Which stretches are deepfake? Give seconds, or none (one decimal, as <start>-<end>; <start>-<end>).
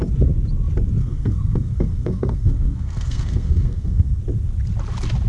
1.0-4.2